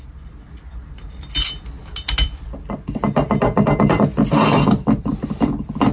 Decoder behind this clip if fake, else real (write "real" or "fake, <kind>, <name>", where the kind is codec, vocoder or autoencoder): real